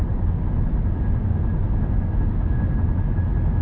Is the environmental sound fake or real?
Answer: real